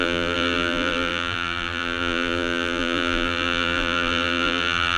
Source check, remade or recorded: remade